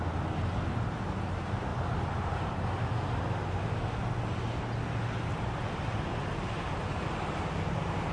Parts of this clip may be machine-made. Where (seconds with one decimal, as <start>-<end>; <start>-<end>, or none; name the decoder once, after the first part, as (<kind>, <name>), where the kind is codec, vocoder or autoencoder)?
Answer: none